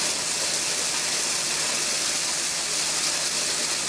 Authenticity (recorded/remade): recorded